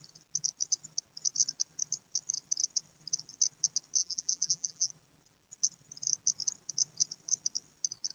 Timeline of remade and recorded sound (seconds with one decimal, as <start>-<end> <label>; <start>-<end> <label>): 0.0-4.0 recorded; 4.0-4.9 remade; 4.9-8.1 recorded